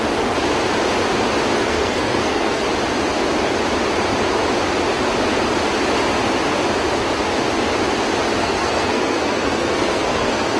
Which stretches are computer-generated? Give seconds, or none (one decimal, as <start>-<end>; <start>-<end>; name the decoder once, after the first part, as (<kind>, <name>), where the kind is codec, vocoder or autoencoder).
1.5-2.6 (codec, SNAC); 8.4-10.6